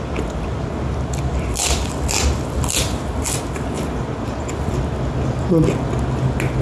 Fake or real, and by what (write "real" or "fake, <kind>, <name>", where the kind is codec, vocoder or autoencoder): real